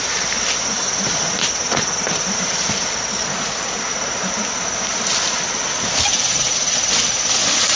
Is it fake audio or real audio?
real